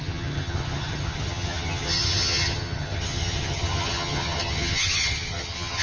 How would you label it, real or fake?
fake